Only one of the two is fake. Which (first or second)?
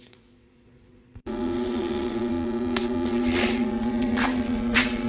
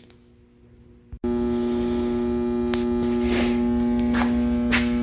first